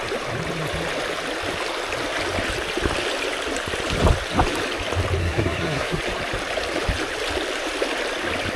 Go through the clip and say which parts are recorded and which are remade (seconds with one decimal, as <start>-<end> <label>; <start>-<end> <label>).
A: 0.0-5.2 recorded; 5.2-6.0 remade; 6.0-8.6 recorded